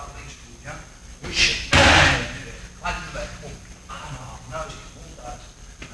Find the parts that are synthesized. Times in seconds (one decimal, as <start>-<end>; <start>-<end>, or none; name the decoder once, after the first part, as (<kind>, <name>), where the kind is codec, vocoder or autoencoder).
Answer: none